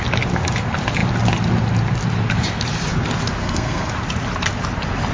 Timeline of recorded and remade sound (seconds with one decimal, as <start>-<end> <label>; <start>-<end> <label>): 0.0-3.4 recorded; 3.4-3.9 remade; 3.9-5.1 recorded